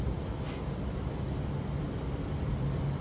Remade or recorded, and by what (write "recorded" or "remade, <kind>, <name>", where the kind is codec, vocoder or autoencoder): recorded